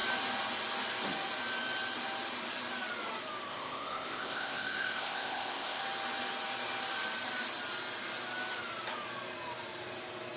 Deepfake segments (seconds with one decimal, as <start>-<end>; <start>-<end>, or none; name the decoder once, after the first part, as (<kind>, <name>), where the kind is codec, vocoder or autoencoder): 3.5-5.8 (codec, ZipCodec)

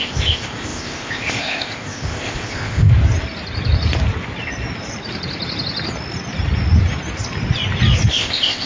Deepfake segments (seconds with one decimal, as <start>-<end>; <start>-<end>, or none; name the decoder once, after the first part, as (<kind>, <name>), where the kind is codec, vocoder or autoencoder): 0.0-2.9 (codec, ZipCodec); 8.1-8.7

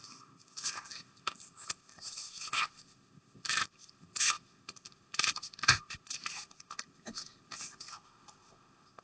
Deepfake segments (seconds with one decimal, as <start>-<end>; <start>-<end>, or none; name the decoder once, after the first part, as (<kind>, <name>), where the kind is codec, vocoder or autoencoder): 0.0-9.0 (codec, ZipCodec)

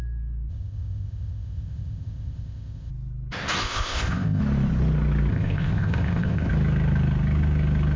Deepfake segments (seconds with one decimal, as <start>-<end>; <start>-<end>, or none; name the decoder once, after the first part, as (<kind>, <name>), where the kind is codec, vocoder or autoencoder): 0.5-2.9 (codec, ZipCodec); 3.6-4.4; 5.3-6.5

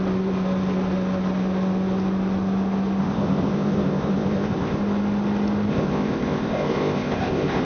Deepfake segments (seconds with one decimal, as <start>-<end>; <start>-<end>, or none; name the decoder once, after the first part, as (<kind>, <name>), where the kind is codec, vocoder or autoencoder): 3.0-4.8 (codec, ZipCodec); 5.7-7.6

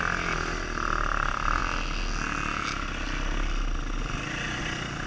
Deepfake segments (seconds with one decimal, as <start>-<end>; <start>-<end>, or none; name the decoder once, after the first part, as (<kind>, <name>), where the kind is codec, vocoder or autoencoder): none

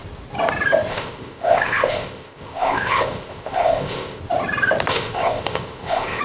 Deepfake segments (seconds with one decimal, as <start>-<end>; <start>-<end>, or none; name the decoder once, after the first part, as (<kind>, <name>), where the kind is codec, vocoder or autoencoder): 0.9-4.2 (codec, ZipCodec); 4.9-6.2